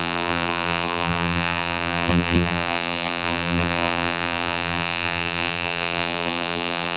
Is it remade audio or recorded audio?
remade